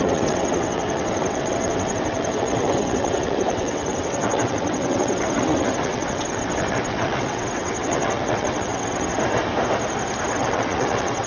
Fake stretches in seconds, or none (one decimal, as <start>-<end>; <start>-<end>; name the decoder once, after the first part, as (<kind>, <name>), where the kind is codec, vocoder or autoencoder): 0.0-9.1 (vocoder, WaveNeXt); 10.3-11.3

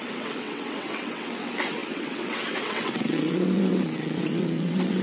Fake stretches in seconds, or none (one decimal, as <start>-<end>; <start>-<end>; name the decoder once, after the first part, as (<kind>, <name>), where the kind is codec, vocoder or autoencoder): 0.0-5.0 (vocoder, WaveNeXt)